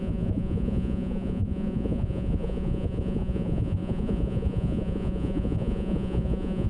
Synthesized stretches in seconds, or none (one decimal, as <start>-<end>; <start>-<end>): 0.0-6.7